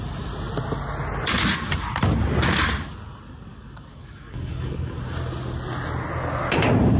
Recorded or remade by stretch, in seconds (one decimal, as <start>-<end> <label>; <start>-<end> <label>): 0.0-3.5 recorded; 3.5-4.9 remade; 4.9-7.0 recorded